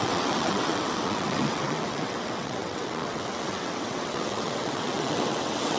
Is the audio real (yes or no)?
no